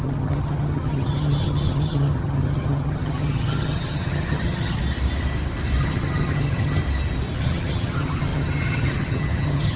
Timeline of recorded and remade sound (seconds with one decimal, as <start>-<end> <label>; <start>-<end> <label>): 0.0-4.8 remade; 4.8-5.8 recorded; 5.8-6.8 remade; 6.8-7.4 recorded; 7.4-9.8 remade